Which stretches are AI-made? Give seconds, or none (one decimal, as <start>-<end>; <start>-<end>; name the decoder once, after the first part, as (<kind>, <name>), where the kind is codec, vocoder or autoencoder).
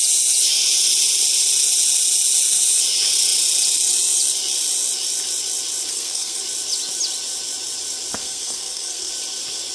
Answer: 5.9-6.4 (codec, SNAC); 8.2-9.1